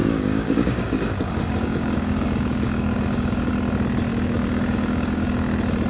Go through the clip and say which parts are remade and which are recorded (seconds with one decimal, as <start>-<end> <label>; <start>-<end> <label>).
0.0-3.5 remade; 3.5-4.1 recorded; 4.1-5.4 remade; 5.4-5.9 recorded